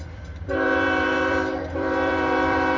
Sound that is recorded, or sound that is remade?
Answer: remade